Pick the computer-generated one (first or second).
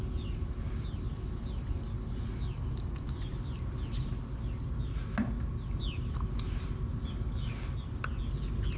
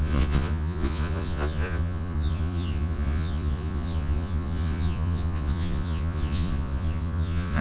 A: second